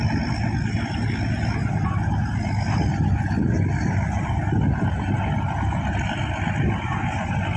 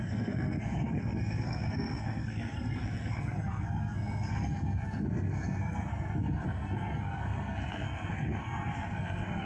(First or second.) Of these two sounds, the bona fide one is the first